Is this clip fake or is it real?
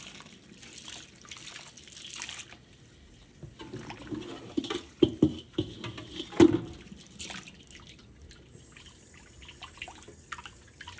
real